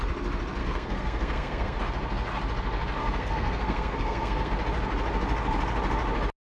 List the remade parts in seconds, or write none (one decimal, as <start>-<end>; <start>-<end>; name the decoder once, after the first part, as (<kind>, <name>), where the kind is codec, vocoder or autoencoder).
0.6-1.8 (codec, SNAC); 3.0-4.5